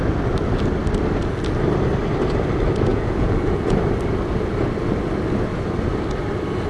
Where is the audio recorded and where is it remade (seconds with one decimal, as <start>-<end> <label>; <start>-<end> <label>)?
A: 0.0-2.9 recorded; 2.9-3.8 remade; 3.8-6.7 recorded